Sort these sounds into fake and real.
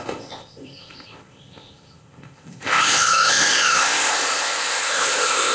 fake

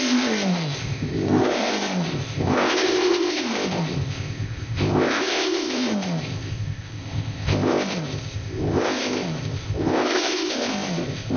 fake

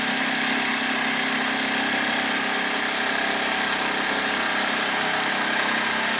real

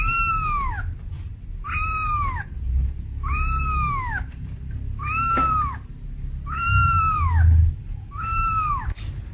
real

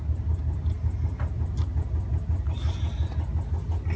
real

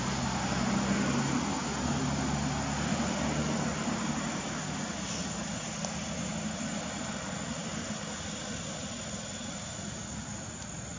real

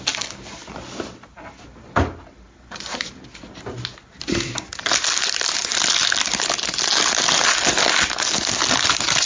real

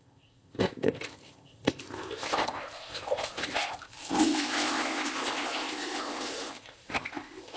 fake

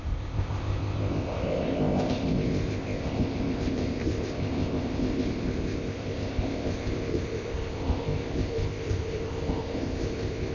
fake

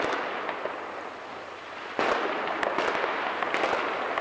real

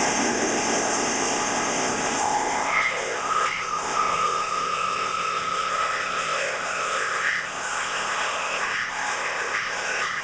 fake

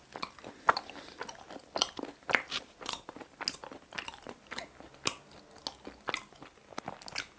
real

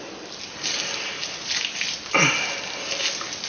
real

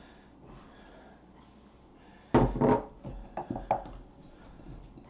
real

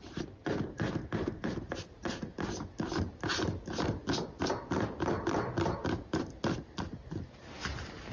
real